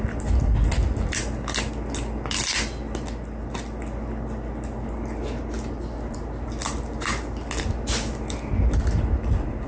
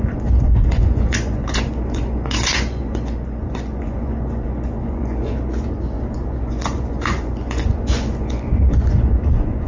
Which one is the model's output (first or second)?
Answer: second